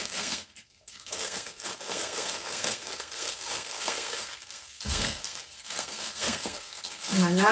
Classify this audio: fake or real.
fake